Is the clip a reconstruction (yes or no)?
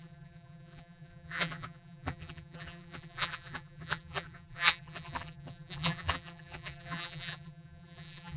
yes